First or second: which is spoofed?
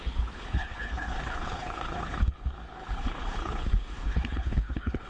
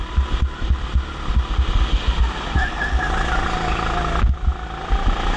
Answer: first